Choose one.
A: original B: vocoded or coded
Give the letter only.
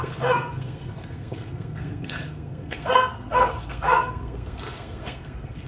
B